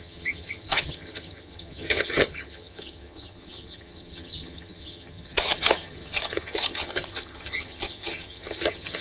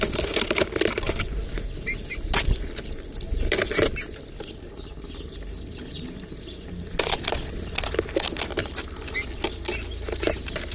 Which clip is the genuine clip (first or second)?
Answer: second